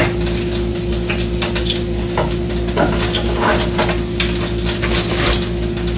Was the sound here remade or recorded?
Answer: recorded